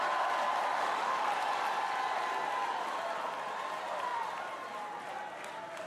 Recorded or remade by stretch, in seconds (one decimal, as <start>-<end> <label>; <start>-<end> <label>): 0.0-0.7 recorded; 0.7-1.3 remade; 1.3-5.9 recorded

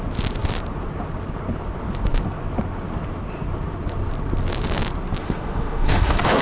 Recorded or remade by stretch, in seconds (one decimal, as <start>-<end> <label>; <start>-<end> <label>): 0.0-5.2 recorded; 5.2-6.4 remade

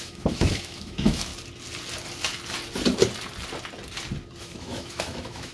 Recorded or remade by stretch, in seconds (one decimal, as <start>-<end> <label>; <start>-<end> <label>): 0.0-1.3 remade; 1.3-4.4 recorded; 4.4-5.5 remade

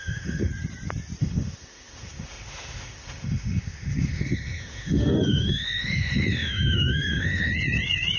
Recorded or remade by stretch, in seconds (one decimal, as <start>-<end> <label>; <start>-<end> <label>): 0.0-0.5 remade; 0.5-1.2 recorded; 1.2-7.5 remade; 7.5-8.2 recorded